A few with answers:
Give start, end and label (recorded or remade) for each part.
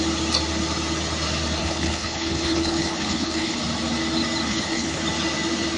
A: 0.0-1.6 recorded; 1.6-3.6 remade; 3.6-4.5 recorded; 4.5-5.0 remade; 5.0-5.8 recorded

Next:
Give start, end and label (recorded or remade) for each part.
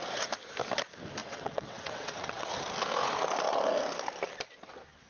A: 0.0-1.2 recorded; 1.2-2.5 remade; 2.5-5.1 recorded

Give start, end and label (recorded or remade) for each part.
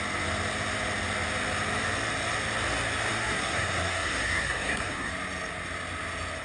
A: 0.0-3.1 recorded; 3.1-5.1 remade; 5.1-6.4 recorded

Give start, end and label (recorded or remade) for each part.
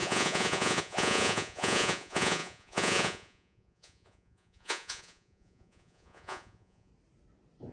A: 0.0-6.9 remade; 6.9-7.7 recorded